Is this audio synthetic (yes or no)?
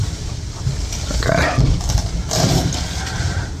yes